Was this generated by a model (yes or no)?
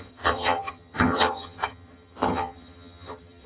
yes